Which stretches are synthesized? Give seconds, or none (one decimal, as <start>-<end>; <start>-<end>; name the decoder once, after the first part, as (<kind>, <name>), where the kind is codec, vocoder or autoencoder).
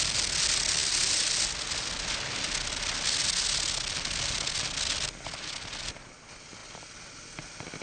none